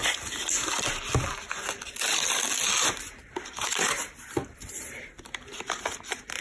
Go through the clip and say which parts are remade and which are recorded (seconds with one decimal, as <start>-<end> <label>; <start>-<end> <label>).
0.0-3.2 recorded; 3.2-4.0 remade; 4.0-4.4 recorded; 4.4-5.0 remade; 5.0-6.4 recorded

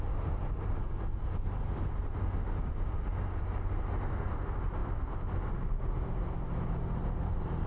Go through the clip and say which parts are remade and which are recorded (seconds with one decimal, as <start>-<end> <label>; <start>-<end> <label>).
0.0-4.8 recorded; 4.8-5.8 remade; 5.8-7.7 recorded

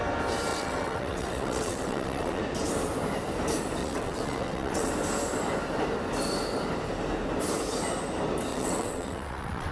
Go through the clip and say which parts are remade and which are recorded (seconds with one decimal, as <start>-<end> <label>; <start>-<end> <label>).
0.0-0.5 recorded; 0.5-2.4 remade; 2.4-3.8 recorded; 3.8-4.9 remade; 4.9-8.5 recorded; 8.5-9.7 remade

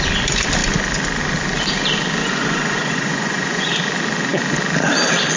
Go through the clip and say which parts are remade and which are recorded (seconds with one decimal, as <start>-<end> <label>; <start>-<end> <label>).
0.0-2.2 recorded; 2.2-3.7 remade; 3.7-5.4 recorded

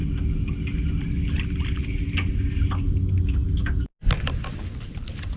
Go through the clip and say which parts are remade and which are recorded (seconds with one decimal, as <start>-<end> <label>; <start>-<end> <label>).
0.0-5.4 recorded

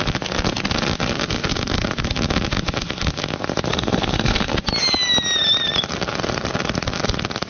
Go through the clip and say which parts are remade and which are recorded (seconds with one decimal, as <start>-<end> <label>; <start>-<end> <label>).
0.0-3.7 recorded; 3.7-4.5 remade; 4.5-7.5 recorded